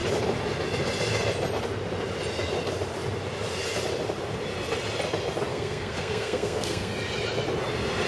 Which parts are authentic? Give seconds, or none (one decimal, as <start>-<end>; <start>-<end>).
0.0-5.5; 6.9-8.1